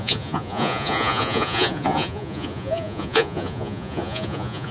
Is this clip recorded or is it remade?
remade